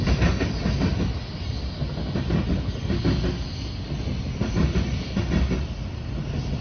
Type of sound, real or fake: real